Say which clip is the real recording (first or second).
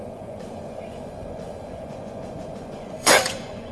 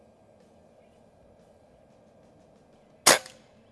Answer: second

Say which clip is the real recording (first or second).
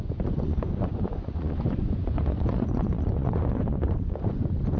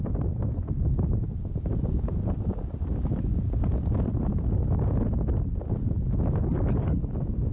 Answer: second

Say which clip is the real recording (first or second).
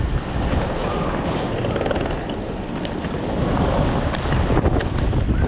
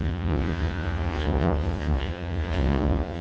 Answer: first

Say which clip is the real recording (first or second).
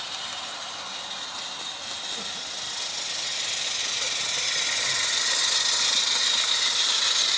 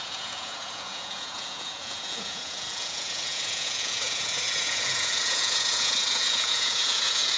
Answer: first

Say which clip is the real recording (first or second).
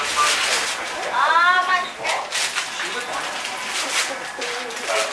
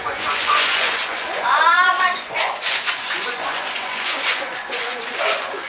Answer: first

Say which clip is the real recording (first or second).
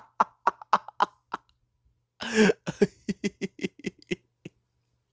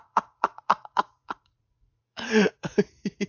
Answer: first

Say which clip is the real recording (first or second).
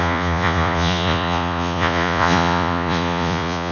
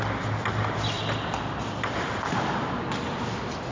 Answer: second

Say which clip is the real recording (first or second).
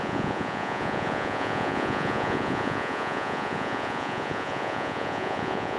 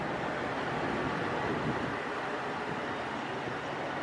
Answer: second